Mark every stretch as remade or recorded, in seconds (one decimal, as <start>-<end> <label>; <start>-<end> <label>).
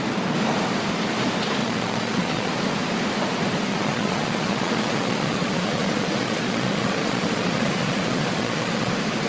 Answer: 0.0-1.6 recorded; 1.6-2.5 remade; 2.5-3.7 recorded; 3.7-8.9 remade; 8.9-9.3 recorded